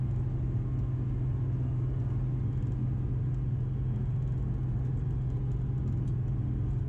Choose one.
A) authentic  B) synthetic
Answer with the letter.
A